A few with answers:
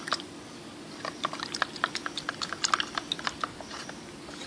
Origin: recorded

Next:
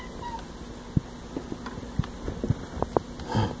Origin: recorded